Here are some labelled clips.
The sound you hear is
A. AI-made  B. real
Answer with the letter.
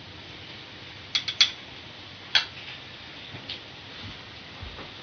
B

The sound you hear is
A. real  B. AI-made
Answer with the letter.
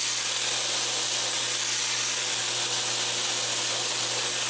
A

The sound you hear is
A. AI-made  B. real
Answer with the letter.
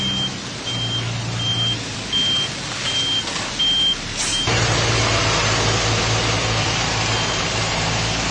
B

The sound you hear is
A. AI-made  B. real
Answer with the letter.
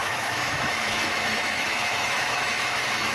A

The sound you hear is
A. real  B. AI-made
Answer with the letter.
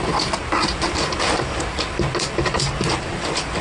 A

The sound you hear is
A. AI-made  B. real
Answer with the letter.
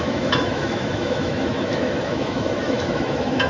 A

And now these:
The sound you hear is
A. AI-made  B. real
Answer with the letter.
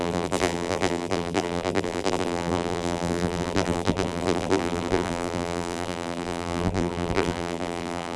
A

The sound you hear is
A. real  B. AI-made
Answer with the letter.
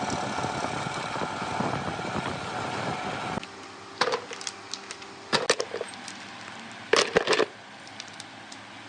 A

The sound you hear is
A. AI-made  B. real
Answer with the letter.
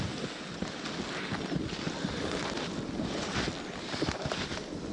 B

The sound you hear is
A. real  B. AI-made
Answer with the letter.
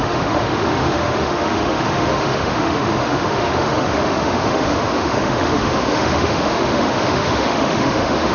B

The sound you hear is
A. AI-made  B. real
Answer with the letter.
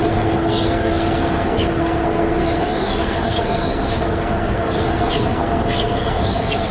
A